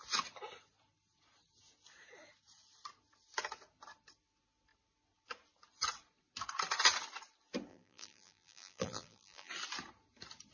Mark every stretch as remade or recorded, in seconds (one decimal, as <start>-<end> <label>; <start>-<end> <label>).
0.0-7.7 recorded; 7.7-9.5 remade; 9.5-10.5 recorded